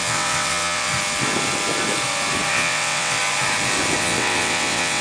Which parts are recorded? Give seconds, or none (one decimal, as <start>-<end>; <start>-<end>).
0.9-2.5; 3.2-4.0

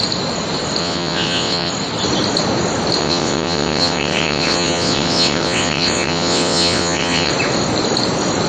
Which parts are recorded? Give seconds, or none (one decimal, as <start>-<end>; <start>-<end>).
0.0-0.8; 1.7-3.0; 7.3-8.5

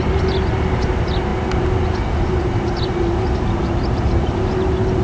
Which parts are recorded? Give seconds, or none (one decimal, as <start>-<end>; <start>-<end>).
0.0-5.0

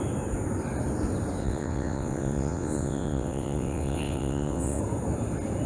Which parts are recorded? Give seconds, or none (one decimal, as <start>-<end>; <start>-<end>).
0.0-1.4; 4.8-5.7